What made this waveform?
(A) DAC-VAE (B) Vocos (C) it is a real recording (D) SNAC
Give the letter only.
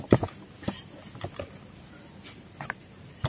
C